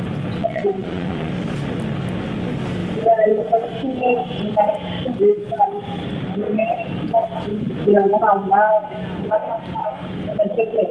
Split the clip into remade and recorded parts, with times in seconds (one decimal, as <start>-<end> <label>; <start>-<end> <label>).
0.0-0.4 recorded; 0.4-1.3 remade; 1.3-10.9 recorded